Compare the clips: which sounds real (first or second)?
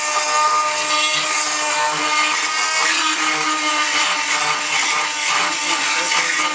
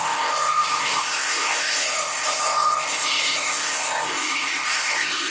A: first